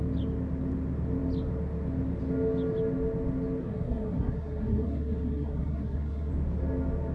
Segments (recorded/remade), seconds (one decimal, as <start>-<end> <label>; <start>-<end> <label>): 0.0-3.6 recorded; 3.6-6.3 remade; 6.3-7.1 recorded